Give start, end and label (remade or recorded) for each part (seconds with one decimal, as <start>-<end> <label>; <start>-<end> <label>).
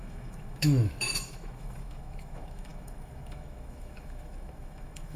0.0-5.2 remade